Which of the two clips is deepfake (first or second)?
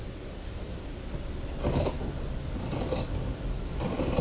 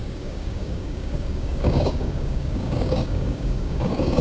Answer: second